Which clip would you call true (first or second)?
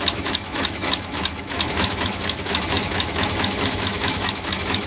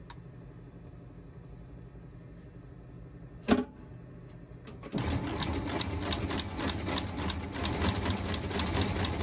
second